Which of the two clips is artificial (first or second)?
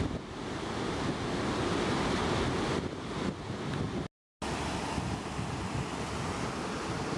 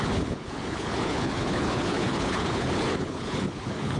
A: second